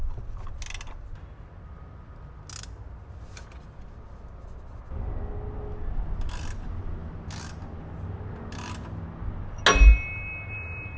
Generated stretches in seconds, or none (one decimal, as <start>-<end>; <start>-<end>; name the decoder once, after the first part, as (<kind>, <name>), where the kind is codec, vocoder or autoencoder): none